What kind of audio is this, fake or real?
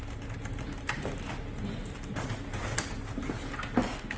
real